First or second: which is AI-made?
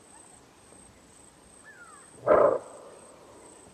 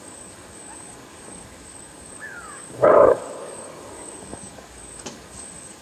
second